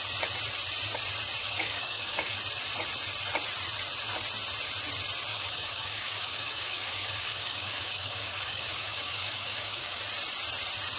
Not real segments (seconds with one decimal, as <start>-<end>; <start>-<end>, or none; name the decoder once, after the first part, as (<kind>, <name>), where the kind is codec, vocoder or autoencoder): 1.4-2.4 (codec, DAC); 5.3-10.0